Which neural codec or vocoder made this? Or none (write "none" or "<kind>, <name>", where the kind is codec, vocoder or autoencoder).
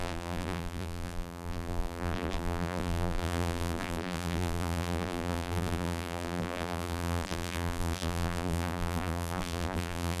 vocoder, BigVGAN v2